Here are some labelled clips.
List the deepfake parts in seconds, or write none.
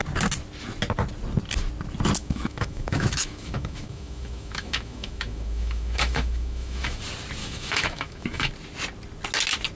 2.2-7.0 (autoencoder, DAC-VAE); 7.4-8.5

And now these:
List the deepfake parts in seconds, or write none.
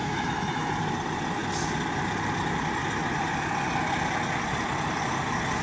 0.0-0.7 (autoencoder, DAC-VAE)